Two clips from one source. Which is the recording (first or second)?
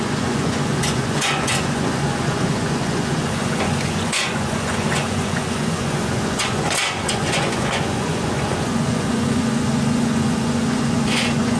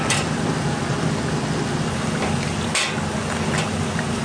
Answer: second